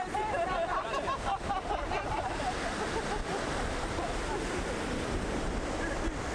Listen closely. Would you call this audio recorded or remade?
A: recorded